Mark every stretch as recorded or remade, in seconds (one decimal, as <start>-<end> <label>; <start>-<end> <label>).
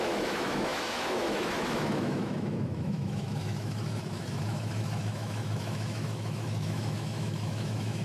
0.0-8.0 remade